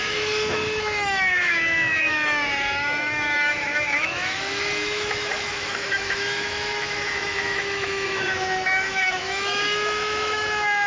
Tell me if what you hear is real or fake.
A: fake